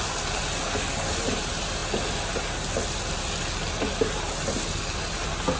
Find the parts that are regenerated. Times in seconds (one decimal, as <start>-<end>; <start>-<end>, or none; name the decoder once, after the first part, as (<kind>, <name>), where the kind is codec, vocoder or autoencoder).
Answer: none